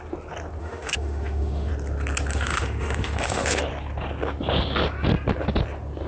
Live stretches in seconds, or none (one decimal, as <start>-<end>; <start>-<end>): 0.0-0.6; 1.7-2.3; 3.6-6.1